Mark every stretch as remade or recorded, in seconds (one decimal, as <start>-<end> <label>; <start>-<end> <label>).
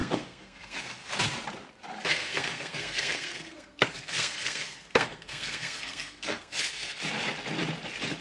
0.0-1.1 remade; 1.1-2.1 recorded; 2.1-7.0 remade; 7.0-8.2 recorded